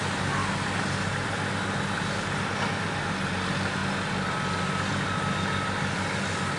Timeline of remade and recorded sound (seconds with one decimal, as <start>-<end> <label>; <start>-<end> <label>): 0.0-6.6 recorded